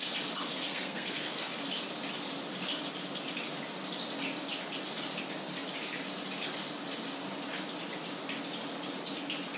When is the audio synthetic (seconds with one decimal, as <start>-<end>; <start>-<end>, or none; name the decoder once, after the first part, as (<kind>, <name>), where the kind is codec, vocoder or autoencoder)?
0.6-1.4 (codec, SNAC)